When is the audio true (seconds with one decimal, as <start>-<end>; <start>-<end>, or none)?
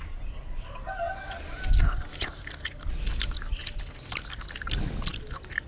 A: 0.0-5.7